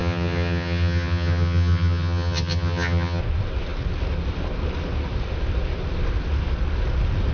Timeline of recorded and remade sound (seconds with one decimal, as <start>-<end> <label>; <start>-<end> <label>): 0.0-3.2 remade; 3.2-7.3 recorded